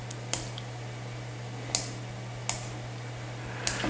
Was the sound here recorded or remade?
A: recorded